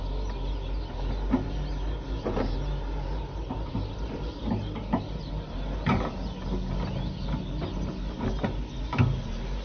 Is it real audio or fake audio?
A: real